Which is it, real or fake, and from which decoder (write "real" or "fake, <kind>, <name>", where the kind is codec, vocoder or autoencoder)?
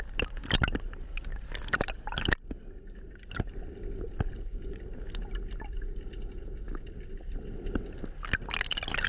real